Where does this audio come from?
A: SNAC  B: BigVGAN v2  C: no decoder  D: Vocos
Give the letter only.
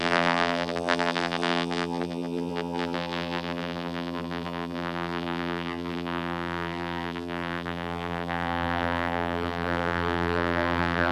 B